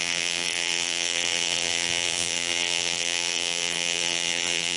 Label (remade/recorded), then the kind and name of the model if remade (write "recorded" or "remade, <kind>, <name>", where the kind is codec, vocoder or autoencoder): remade, vocoder, BigVGAN v2